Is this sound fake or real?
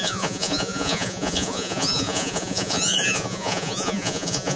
fake